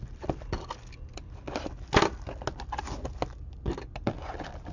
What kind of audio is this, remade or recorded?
recorded